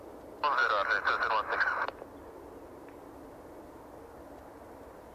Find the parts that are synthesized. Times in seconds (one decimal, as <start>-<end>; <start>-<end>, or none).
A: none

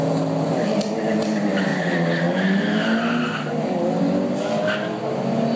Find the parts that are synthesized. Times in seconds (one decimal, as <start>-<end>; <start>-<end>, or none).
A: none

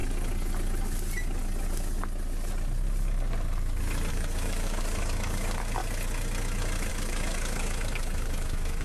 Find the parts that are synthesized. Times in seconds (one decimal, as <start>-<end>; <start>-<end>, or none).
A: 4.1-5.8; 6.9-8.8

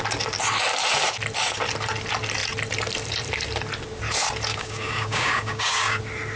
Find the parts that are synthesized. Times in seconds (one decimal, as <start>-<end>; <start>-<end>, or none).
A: 4.5-6.0

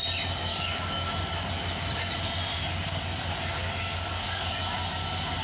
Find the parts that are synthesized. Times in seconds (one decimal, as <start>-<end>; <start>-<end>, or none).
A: 0.5-1.5; 2.5-4.5

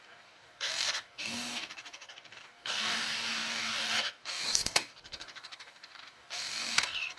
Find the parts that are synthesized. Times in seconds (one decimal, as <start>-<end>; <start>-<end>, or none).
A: 0.0-7.2

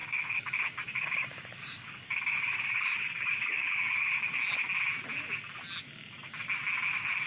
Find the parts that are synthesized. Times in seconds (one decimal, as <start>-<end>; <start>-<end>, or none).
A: 0.0-4.4

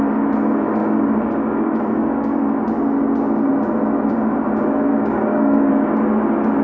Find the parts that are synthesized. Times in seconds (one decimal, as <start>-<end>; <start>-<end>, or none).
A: 0.8-2.6; 4.9-5.7